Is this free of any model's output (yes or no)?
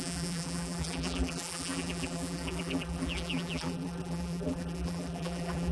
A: no